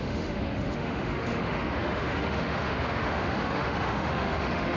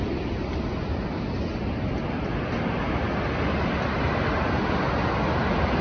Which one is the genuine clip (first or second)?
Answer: second